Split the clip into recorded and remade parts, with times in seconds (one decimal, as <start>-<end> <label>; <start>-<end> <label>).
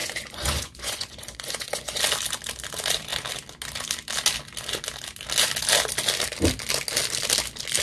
0.0-2.0 remade; 2.0-7.8 recorded